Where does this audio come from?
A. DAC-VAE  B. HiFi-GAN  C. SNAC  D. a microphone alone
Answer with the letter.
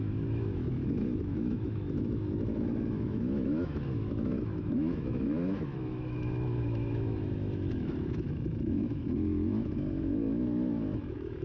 A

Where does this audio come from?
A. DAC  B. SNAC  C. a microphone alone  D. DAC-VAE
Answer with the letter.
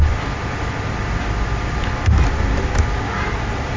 C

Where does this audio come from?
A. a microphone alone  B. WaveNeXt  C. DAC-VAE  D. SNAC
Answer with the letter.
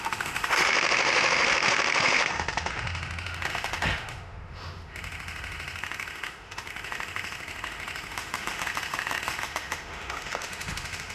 C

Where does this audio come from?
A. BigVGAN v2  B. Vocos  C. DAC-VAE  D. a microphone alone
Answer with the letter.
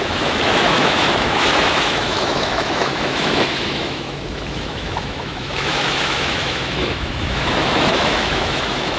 C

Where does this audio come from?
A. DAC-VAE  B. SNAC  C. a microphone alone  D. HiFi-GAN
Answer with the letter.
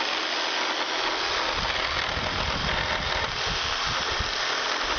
C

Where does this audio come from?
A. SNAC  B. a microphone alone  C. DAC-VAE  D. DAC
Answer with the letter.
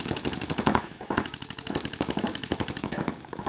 C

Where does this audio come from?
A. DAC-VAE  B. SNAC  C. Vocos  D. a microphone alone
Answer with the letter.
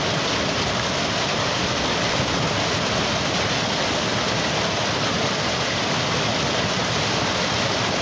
D